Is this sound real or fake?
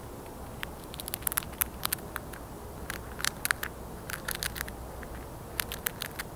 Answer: real